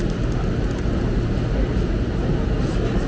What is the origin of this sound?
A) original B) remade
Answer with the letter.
A